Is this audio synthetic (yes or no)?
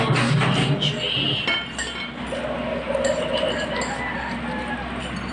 no